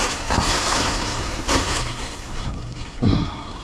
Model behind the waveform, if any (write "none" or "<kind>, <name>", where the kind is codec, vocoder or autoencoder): codec, SNAC